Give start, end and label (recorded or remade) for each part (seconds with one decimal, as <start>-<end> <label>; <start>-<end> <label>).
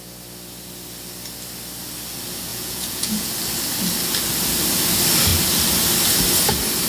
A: 0.0-2.5 recorded; 2.5-3.3 remade; 3.3-6.9 recorded